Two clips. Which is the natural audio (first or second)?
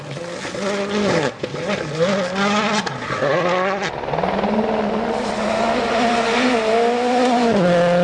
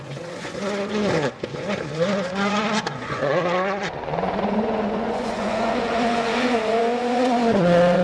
first